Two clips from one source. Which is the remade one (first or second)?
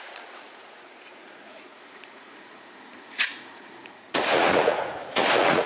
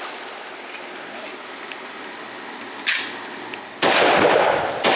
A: first